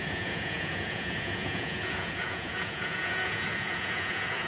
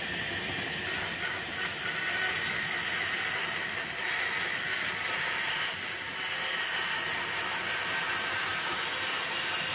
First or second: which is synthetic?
first